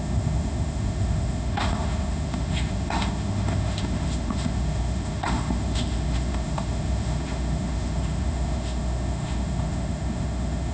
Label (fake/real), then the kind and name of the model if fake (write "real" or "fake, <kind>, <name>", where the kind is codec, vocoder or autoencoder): fake, autoencoder, DAC-VAE